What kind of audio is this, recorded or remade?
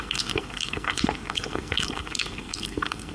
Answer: remade